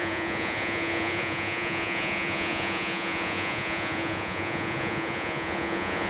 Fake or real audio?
fake